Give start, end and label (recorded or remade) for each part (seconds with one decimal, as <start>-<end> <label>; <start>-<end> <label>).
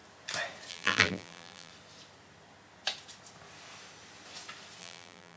0.0-0.7 recorded; 0.7-1.7 remade; 1.7-4.8 recorded; 4.8-5.4 remade